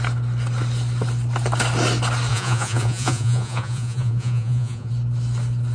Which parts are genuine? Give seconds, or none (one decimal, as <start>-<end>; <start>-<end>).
0.0-2.3; 4.9-5.7